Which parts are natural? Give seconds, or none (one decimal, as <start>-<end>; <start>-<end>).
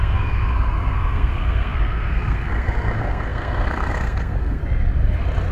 4.6-5.5